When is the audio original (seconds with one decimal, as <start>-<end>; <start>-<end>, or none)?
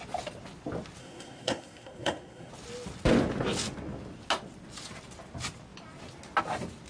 0.0-1.0; 2.5-6.9